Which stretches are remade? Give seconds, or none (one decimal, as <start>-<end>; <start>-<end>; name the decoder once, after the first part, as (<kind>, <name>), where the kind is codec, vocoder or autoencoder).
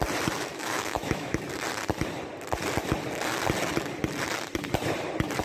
0.5-1.4 (autoencoder, DAC-VAE)